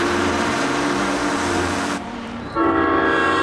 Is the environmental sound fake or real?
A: fake